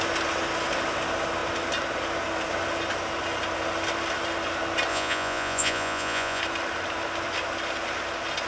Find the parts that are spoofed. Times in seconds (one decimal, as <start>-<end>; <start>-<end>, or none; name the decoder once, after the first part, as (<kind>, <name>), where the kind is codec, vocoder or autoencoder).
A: 4.9-6.4 (vocoder, Vocos)